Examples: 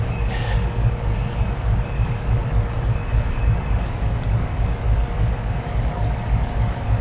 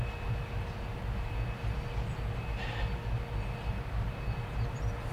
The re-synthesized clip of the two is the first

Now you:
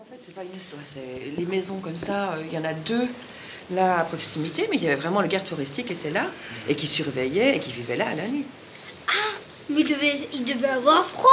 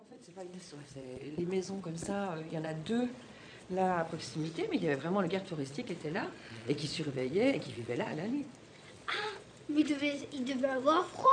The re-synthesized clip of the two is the second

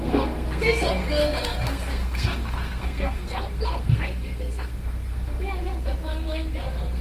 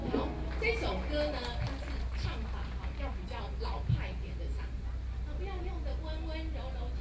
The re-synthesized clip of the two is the first